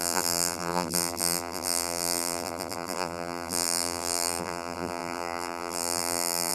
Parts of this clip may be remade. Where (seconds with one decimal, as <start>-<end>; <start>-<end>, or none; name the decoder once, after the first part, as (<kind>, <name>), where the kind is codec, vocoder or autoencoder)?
0.0-6.5 (vocoder, BigVGAN v2)